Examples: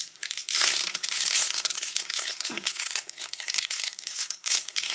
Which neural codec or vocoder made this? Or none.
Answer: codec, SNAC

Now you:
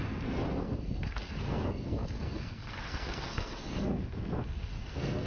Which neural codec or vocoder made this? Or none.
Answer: codec, SNAC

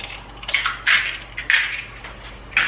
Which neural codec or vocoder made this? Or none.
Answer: none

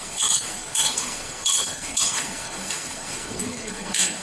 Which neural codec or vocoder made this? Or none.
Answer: codec, SNAC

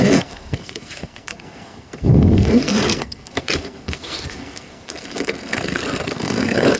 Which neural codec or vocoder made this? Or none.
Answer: codec, SNAC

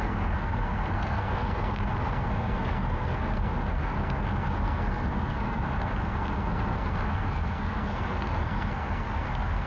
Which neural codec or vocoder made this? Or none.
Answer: codec, SNAC